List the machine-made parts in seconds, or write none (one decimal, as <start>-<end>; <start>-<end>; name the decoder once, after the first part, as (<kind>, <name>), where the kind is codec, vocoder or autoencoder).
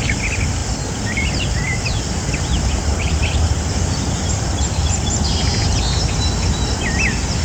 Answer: 0.6-5.0 (vocoder, BigVGAN v2)